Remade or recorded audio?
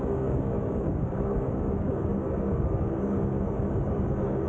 remade